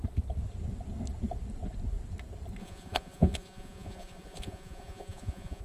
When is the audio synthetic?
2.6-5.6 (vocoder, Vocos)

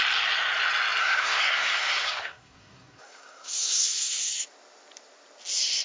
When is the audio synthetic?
1.0-4.3 (codec, SNAC)

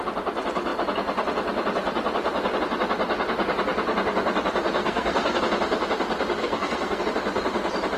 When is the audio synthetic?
4.8-5.4 (codec, SNAC); 6.4-7.0

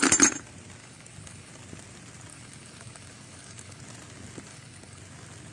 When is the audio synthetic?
0.8-1.5 (codec, DAC); 2.3-3.8; 4.5-5.0

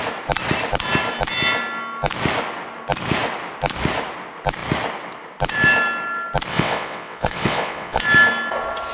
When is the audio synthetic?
6.5-8.0 (vocoder, WaveNeXt)

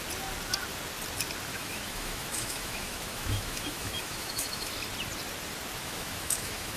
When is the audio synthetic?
1.5-4.7 (autoencoder, DAC-VAE); 5.8-6.8

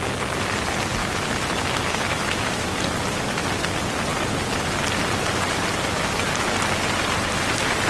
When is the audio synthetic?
1.0-2.7 (autoencoder, DAC-VAE)

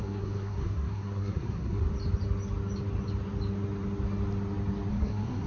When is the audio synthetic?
0.0-1.9 (codec, SNAC); 4.9-5.5